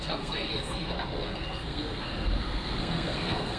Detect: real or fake fake